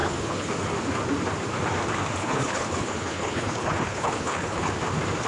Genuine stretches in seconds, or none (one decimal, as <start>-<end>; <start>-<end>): 0.5-2.2; 4.7-5.3